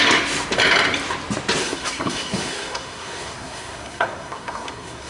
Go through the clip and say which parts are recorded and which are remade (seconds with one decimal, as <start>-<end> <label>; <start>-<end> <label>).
0.0-1.6 recorded; 1.6-5.1 remade